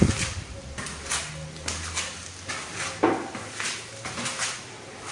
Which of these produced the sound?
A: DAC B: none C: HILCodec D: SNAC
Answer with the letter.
B